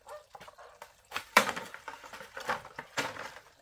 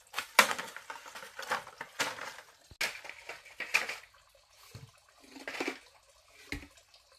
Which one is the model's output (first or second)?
first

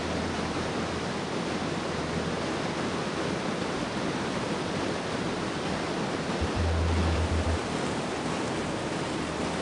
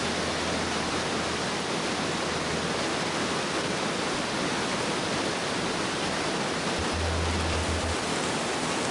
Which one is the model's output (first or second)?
first